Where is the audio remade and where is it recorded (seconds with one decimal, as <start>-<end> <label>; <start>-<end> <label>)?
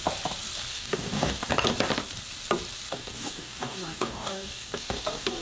0.0-0.7 recorded; 0.7-1.5 remade; 1.5-2.9 recorded; 2.9-5.4 remade